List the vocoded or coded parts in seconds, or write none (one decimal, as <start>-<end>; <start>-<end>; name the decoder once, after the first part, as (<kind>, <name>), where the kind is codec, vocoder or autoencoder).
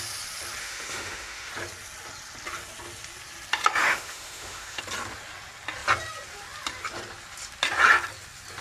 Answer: 0.6-1.5 (autoencoder, DAC-VAE); 3.8-4.8